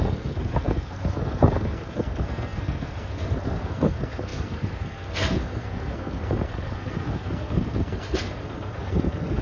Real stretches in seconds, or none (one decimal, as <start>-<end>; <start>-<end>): none